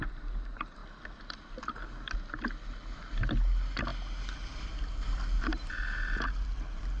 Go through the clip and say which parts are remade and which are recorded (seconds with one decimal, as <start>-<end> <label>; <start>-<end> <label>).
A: 0.0-7.0 recorded